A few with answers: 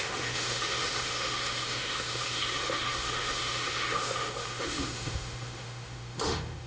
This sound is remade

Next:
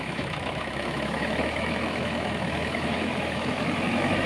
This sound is remade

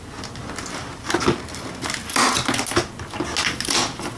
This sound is recorded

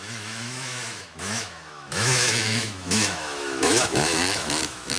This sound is remade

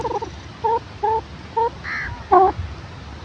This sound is recorded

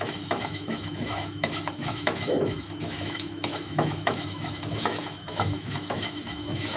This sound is remade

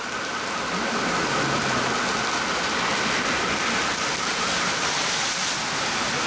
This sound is recorded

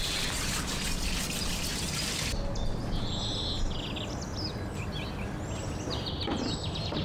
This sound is recorded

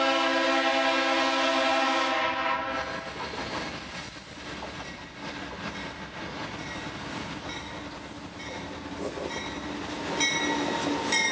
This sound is recorded